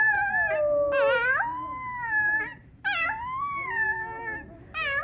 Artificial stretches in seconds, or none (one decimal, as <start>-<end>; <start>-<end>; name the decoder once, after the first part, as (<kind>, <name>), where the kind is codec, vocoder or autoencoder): 1.5-3.7 (vocoder, BigVGAN v2)